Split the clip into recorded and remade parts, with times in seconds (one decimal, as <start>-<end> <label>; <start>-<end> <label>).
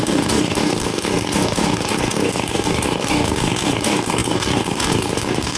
0.0-5.6 remade